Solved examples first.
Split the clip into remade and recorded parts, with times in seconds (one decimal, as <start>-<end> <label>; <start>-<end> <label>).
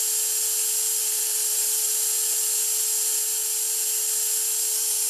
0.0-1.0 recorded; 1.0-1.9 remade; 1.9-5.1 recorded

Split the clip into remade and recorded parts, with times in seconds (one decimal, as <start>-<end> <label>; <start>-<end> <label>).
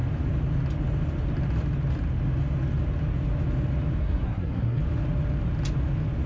0.0-4.0 recorded; 4.0-4.8 remade; 4.8-6.3 recorded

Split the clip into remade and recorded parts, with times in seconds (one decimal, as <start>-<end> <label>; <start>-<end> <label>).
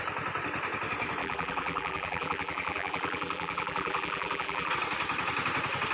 0.0-1.2 recorded; 1.2-4.7 remade; 4.7-5.9 recorded